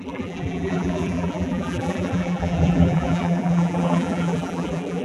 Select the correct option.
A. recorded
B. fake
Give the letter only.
B